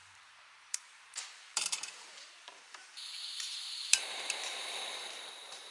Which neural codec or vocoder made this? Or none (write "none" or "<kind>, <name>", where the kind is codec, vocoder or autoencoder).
vocoder, BigVGAN v2